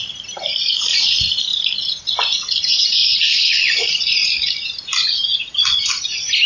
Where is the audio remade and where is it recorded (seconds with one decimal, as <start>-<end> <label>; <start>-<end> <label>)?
0.0-1.5 remade; 1.5-2.6 recorded; 2.6-6.5 remade